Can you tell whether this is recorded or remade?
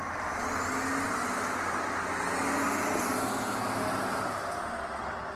recorded